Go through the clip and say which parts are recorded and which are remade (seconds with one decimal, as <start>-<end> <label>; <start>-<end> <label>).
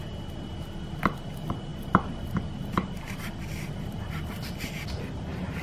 0.0-5.6 recorded